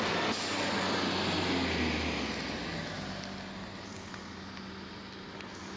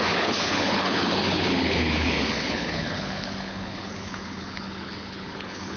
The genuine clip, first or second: first